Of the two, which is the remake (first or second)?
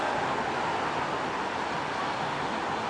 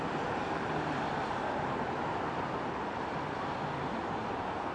second